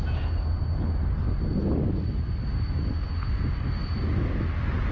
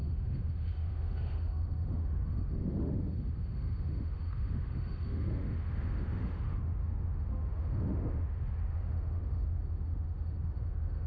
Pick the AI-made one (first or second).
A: second